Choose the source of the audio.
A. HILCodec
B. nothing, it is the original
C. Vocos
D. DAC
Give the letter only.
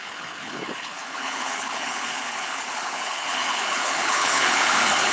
A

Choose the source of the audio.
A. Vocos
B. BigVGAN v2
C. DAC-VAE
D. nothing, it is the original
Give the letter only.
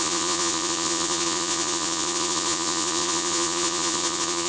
A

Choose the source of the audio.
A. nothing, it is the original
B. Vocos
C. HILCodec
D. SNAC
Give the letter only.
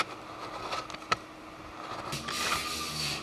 A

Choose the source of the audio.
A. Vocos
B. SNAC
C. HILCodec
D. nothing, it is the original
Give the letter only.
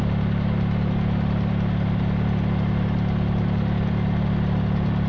D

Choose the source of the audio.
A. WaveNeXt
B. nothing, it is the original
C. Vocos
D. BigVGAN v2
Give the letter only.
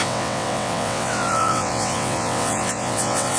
A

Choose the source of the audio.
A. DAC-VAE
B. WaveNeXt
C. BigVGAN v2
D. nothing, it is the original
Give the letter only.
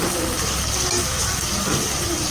C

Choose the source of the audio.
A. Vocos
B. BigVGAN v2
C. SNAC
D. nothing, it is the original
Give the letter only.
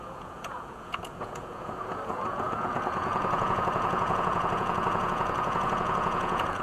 A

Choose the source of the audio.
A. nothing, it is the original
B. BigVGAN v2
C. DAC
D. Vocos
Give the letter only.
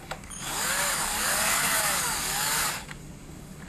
C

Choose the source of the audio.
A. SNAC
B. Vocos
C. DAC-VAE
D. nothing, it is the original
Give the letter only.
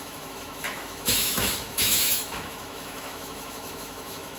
C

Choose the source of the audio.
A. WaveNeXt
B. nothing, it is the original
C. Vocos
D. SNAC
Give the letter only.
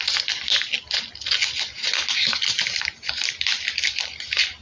B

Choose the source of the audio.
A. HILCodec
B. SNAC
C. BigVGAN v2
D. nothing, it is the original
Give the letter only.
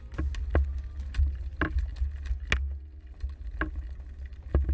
D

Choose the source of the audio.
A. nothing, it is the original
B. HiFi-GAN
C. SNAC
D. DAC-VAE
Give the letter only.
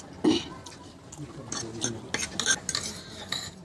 A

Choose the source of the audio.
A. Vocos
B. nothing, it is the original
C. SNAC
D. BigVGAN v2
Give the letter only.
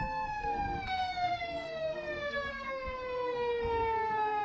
C